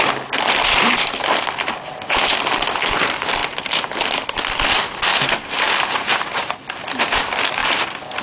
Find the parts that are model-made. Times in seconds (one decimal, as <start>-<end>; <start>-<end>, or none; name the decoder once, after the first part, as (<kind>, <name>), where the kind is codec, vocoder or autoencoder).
3.4-4.4 (vocoder, BigVGAN v2); 5.1-6.5